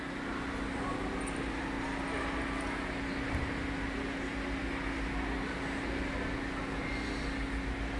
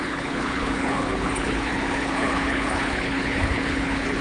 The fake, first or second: second